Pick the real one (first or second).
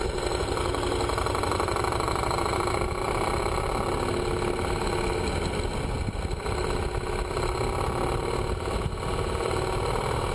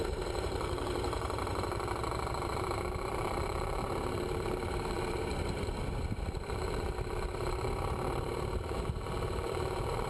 first